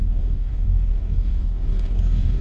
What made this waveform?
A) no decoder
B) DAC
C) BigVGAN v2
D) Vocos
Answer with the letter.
B